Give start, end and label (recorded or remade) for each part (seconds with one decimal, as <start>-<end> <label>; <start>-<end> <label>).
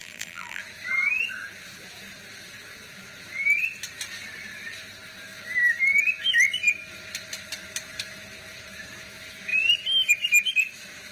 0.0-0.6 remade; 0.6-11.1 recorded